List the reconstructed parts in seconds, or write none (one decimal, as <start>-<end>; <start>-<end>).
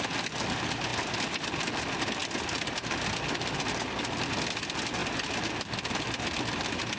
2.2-3.6; 5.0-5.6